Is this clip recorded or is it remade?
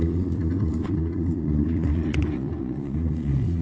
remade